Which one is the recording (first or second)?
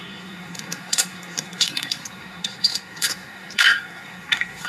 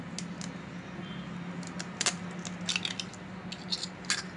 second